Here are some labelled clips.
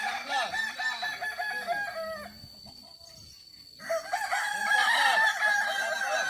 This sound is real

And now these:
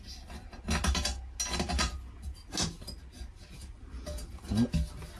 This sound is real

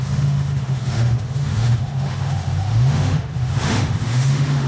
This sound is fake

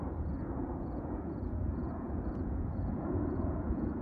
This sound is fake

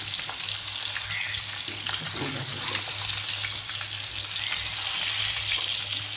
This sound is real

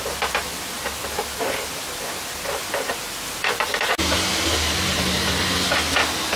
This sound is real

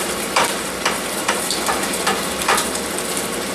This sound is fake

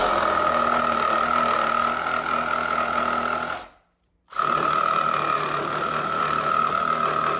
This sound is real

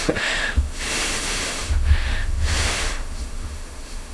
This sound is fake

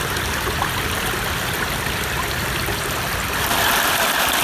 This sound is real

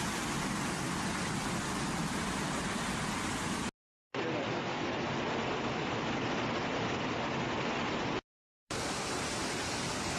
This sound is real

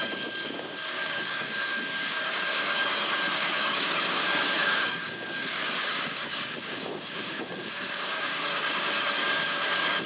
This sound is fake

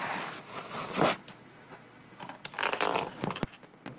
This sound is real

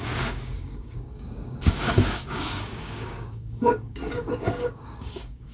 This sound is fake